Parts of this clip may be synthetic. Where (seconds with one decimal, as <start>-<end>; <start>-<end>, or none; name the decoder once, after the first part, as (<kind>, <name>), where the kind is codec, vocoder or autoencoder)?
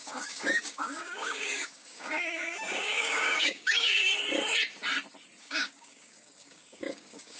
0.0-4.1 (codec, DAC); 5.4-7.4